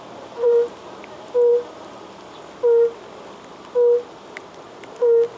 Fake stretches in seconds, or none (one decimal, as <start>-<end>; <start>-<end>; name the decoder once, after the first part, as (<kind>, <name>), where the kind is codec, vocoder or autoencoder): none